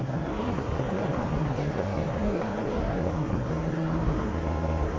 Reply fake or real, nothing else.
fake